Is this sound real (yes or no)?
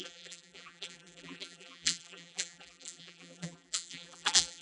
no